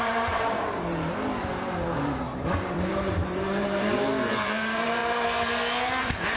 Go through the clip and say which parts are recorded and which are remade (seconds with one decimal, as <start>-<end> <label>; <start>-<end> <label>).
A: 0.0-5.0 remade; 5.0-6.0 recorded; 6.0-6.4 remade

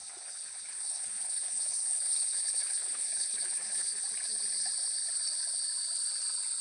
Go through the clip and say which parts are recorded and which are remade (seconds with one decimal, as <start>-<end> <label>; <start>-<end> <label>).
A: 0.0-4.0 remade; 4.0-6.6 recorded

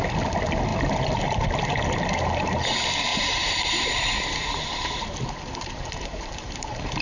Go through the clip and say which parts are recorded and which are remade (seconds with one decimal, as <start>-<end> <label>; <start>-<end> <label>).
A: 0.0-3.1 recorded; 3.1-7.0 remade

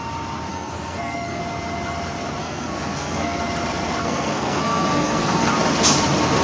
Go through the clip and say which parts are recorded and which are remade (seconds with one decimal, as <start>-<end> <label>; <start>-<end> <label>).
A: 0.0-0.5 recorded; 0.5-1.4 remade; 1.4-2.4 recorded; 2.4-3.4 remade; 3.4-4.0 recorded; 4.0-5.5 remade; 5.5-6.4 recorded

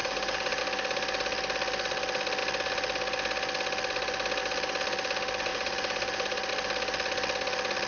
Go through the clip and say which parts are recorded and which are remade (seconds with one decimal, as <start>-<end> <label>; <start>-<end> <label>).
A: 0.0-0.6 remade; 0.6-5.5 recorded; 5.5-6.5 remade; 6.5-7.9 recorded

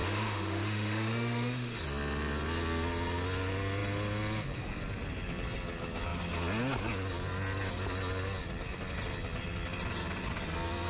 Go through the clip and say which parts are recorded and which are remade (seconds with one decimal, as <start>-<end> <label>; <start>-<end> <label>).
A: 0.0-1.8 remade; 1.8-10.9 recorded

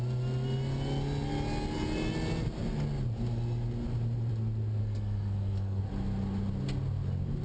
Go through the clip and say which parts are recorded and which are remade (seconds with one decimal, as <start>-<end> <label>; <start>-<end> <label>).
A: 0.0-4.8 recorded; 4.8-5.8 remade; 5.8-7.4 recorded